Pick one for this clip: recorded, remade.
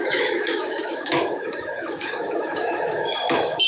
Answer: remade